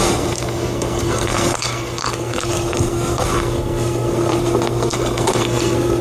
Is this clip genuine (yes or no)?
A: no